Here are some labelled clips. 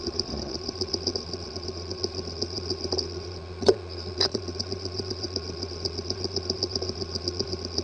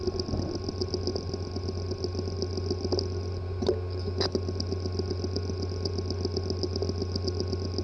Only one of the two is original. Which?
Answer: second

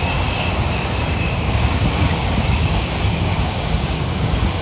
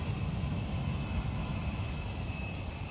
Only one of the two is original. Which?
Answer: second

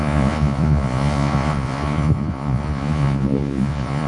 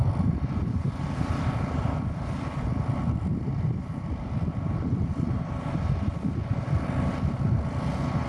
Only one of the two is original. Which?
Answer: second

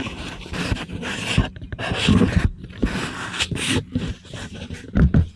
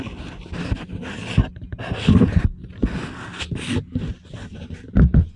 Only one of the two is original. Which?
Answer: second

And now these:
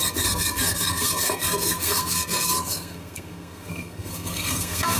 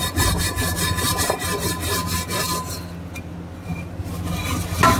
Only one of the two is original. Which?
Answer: second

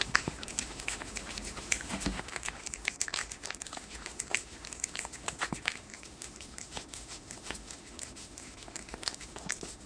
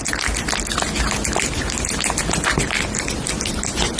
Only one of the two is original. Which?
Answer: second